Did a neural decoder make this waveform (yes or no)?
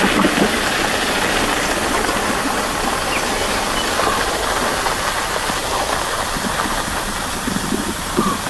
no